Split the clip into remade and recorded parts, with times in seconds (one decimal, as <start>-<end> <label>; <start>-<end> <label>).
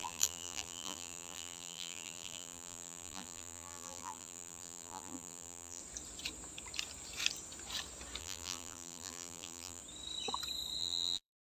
0.0-5.8 remade; 5.8-8.2 recorded; 8.2-9.8 remade; 9.8-10.8 recorded; 10.8-11.4 remade